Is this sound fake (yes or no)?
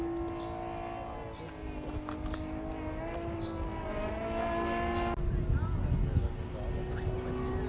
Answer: no